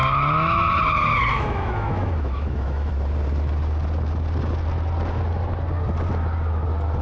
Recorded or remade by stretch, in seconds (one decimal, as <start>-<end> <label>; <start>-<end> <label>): 0.0-0.8 remade; 0.8-1.3 recorded; 1.3-2.9 remade; 2.9-7.0 recorded